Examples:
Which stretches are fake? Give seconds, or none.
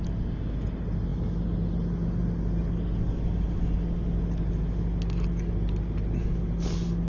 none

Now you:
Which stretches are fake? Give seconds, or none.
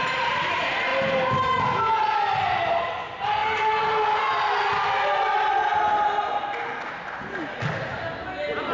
none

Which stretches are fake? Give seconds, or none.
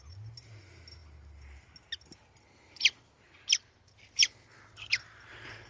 none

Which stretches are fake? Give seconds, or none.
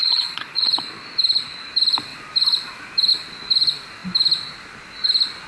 0.0-0.7 (vocoder, Vocos)